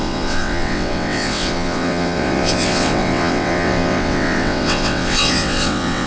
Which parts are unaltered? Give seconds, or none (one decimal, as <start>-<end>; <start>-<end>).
none